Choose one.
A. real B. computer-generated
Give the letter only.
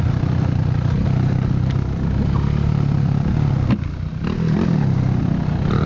A